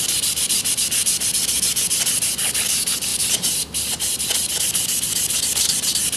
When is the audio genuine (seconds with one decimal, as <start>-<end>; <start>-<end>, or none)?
0.0-6.2